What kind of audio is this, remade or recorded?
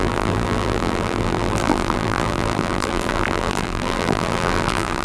remade